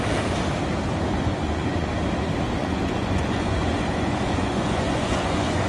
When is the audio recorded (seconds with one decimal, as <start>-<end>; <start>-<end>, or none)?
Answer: 0.0-1.3; 1.9-2.6